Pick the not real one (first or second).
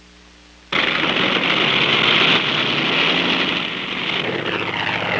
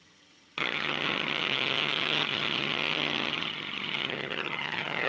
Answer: second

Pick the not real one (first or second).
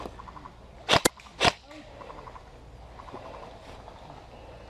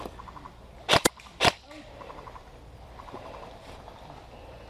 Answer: second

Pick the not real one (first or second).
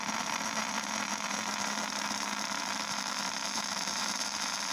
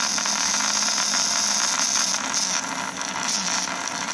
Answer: first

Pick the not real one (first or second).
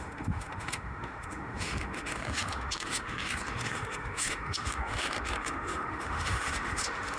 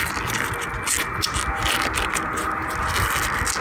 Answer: first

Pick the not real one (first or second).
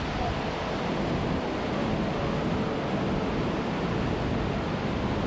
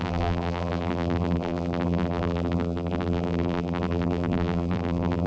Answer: second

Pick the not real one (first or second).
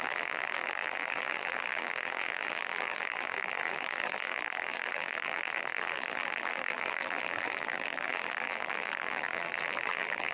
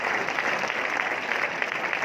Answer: first